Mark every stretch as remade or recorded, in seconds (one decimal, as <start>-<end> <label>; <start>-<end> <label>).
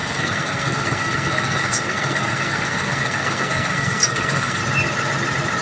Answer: 0.0-4.6 remade; 4.6-5.6 recorded